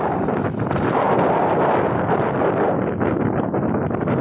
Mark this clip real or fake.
real